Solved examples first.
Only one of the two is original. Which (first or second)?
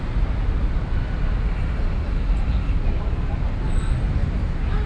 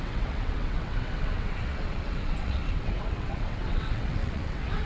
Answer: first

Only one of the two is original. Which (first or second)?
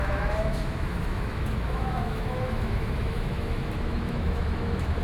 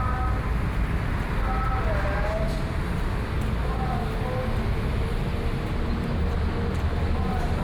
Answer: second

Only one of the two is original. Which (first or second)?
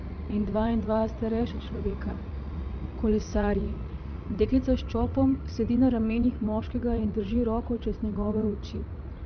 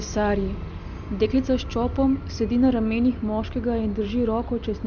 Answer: second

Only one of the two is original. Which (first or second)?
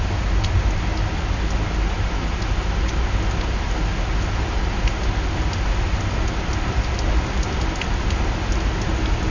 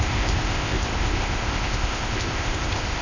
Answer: first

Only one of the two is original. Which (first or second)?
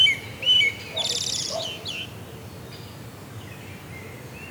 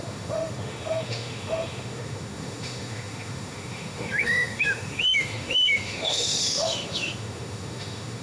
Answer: first